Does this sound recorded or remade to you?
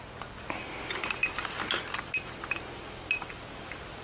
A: recorded